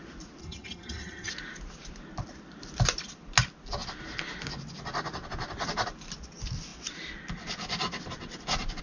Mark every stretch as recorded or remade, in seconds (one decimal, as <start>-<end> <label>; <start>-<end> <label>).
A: 0.0-0.4 recorded; 0.4-1.3 remade; 1.3-8.8 recorded